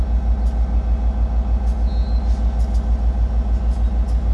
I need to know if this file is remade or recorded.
recorded